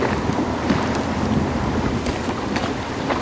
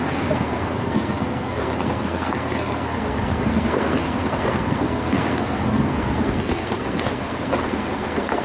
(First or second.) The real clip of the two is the first